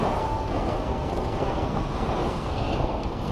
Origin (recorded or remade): remade